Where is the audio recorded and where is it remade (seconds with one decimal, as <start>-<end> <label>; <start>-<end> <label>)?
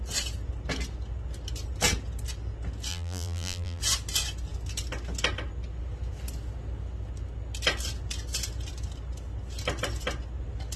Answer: 0.0-2.9 recorded; 2.9-3.8 remade; 3.8-10.8 recorded